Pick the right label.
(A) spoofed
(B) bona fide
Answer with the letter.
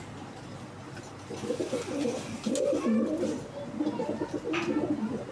B